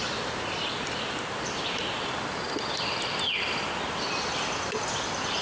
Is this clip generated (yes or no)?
no